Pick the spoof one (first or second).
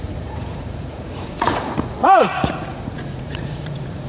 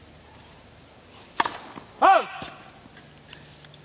first